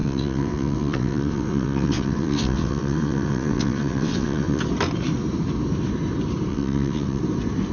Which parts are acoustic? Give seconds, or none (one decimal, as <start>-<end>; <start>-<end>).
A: 4.6-6.5; 7.2-7.7